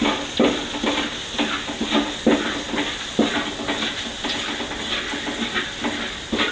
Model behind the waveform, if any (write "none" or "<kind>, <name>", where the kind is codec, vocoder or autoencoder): none